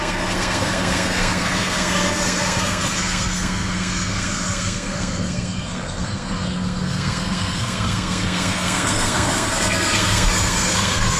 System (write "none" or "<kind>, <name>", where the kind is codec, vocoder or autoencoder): codec, SNAC